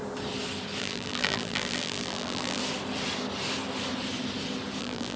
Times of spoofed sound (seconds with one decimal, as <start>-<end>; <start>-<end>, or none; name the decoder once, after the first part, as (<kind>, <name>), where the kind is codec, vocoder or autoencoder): 0.8-2.6 (vocoder, BigVGAN v2); 4.8-5.2